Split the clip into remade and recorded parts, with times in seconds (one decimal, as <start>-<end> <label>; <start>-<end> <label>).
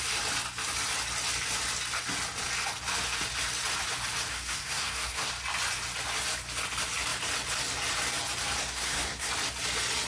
0.0-4.3 recorded; 4.3-5.3 remade; 5.3-8.6 recorded; 8.6-9.3 remade; 9.3-10.1 recorded